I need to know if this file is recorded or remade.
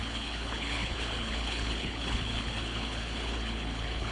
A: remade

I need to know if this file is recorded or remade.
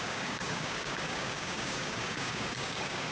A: remade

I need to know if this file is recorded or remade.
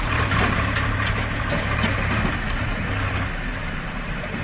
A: remade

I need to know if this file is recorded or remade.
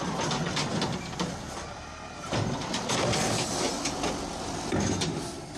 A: remade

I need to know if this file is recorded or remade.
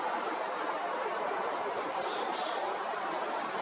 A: remade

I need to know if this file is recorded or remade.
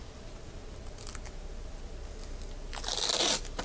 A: recorded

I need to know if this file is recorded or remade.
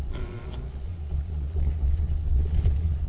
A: remade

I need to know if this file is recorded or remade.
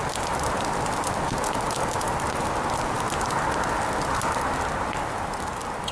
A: recorded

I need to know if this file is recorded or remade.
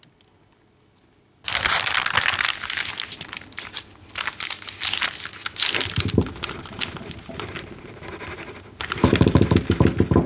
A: recorded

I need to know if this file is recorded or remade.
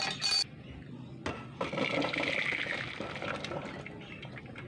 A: recorded